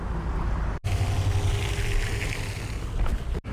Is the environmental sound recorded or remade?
recorded